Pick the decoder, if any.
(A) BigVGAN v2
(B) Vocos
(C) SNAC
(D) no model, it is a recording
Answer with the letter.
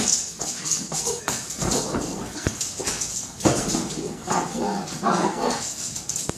C